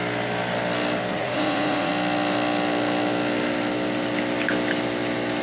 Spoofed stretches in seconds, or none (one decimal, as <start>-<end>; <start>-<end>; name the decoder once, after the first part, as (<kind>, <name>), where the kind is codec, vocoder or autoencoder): 1.1-1.9 (vocoder, Vocos)